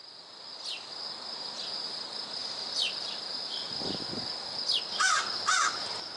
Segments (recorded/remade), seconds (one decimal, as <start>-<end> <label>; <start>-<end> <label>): 0.0-2.4 recorded; 2.4-4.6 remade; 4.6-6.2 recorded